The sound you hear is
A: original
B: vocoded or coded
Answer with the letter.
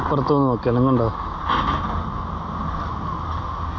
A